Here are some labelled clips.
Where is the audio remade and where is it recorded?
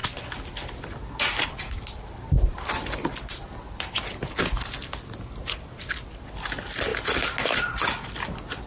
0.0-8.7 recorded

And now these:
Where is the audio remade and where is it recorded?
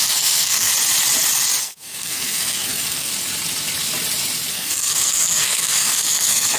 0.0-0.7 remade; 0.7-1.6 recorded; 1.6-3.1 remade; 3.1-4.5 recorded; 4.5-6.6 remade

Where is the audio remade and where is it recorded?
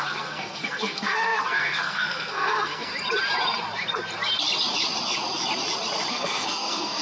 0.0-2.9 remade; 2.9-6.1 recorded; 6.1-7.0 remade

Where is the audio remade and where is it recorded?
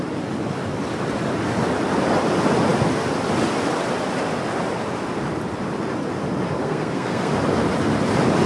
0.0-6.6 recorded; 6.6-7.3 remade; 7.3-8.5 recorded